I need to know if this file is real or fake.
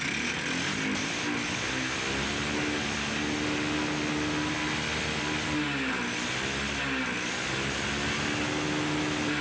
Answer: real